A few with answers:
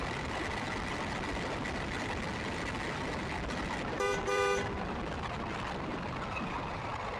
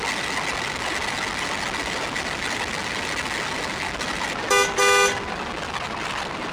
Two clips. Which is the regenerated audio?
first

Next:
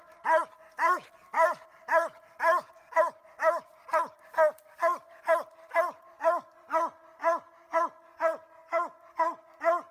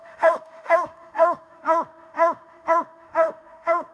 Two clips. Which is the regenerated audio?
second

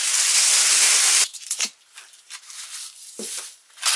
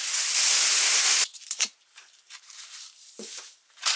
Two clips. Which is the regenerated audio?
second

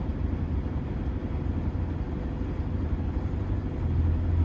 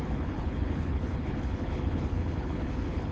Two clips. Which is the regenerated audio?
second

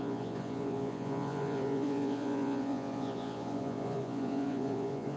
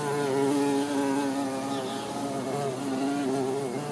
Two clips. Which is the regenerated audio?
first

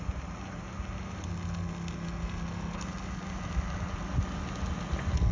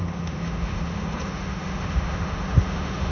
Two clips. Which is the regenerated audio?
second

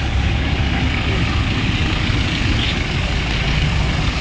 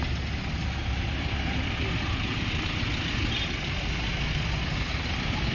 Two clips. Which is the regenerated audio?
first